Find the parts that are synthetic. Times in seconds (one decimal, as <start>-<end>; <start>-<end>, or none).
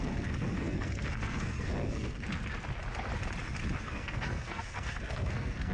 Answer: 0.0-2.4; 3.8-5.7